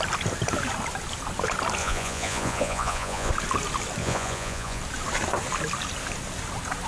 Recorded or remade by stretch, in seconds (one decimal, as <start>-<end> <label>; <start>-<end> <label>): 0.0-1.8 recorded; 1.8-3.3 remade; 3.3-4.0 recorded; 4.0-4.8 remade; 4.8-6.9 recorded